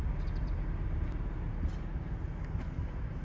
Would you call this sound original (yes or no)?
yes